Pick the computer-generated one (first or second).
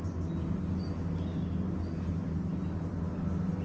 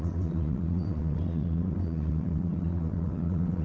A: second